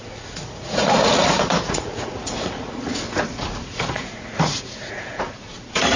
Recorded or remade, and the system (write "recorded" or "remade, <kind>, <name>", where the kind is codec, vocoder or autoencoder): remade, vocoder, Vocos